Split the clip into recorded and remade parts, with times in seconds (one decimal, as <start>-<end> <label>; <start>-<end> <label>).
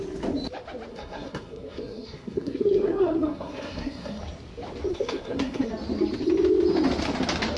0.0-0.9 recorded; 0.9-4.2 remade; 4.2-4.9 recorded; 4.9-5.7 remade; 5.7-7.6 recorded